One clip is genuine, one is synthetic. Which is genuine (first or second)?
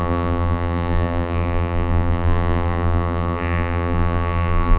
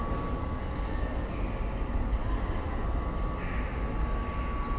second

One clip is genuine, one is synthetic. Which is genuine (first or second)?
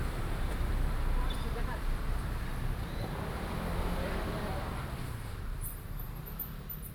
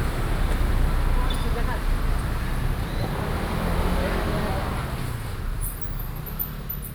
second